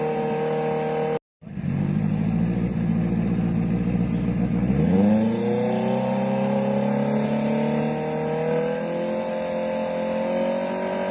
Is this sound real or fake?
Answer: real